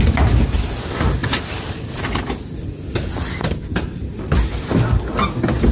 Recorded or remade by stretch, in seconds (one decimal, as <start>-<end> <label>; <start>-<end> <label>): 0.0-5.7 recorded